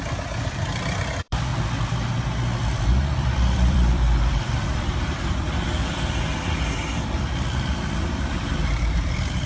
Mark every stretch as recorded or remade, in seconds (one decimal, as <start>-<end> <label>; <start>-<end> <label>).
0.0-1.5 remade; 1.5-3.0 recorded; 3.0-9.5 remade